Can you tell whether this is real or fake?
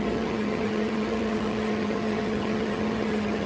fake